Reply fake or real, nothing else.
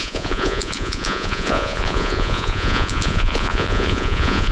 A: fake